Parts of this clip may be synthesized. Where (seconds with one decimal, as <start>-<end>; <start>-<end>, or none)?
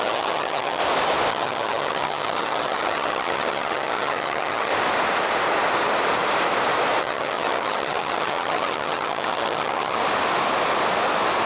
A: 0.0-0.8; 1.3-4.7; 7.0-10.0